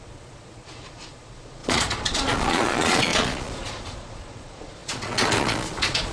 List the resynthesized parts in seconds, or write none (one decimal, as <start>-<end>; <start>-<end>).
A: 0.0-6.1